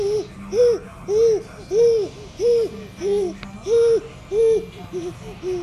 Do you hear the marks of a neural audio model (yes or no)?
no